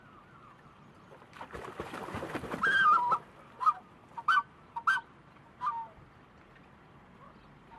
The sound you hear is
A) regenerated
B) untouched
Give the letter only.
A